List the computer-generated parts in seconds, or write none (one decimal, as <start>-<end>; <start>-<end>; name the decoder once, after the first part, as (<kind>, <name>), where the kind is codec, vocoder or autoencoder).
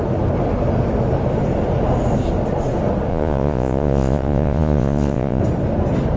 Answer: 3.1-5.4 (vocoder, Vocos)